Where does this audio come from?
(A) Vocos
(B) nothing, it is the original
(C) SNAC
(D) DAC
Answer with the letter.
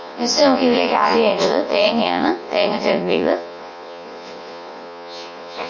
A